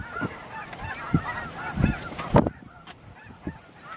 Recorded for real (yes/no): yes